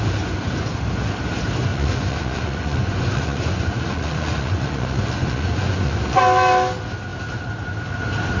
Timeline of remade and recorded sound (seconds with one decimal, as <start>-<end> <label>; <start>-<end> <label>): 0.0-1.7 recorded; 1.7-6.2 remade; 6.2-8.4 recorded